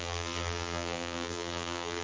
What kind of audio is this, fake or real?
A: fake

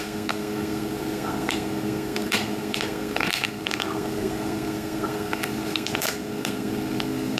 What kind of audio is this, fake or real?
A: fake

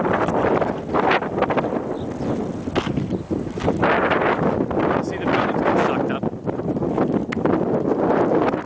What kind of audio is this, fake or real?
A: real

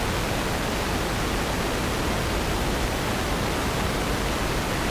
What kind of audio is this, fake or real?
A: real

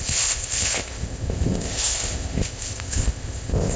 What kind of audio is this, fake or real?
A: fake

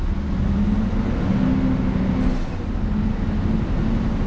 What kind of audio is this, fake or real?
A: real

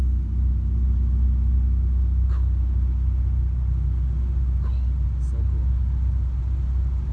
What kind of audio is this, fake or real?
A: real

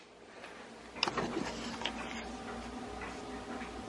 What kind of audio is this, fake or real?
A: real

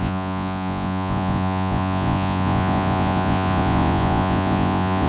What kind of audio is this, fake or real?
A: fake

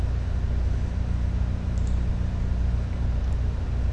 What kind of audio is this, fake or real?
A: real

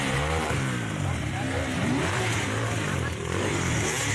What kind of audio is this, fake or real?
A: fake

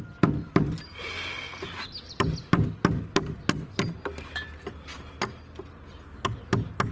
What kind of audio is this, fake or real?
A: real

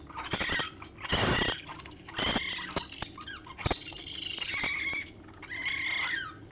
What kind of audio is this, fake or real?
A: real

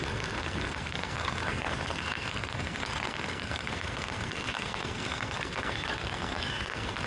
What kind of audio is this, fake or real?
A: fake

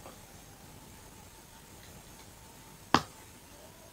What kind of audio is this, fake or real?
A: real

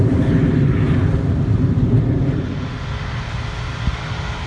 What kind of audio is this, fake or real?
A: real